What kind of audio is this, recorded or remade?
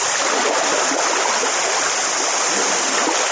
recorded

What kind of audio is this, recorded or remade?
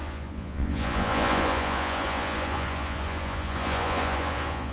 remade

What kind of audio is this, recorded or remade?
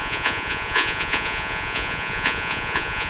remade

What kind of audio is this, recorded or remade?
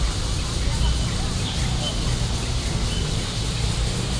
recorded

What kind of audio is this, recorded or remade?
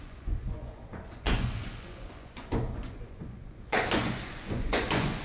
remade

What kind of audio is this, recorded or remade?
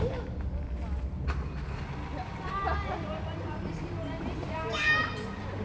recorded